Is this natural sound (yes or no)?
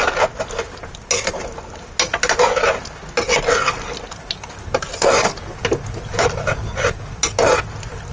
yes